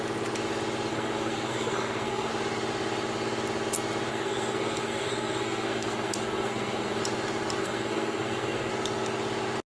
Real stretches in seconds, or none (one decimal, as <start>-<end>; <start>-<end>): 0.0-0.9; 2.3-4.1; 7.0-7.6; 8.7-9.7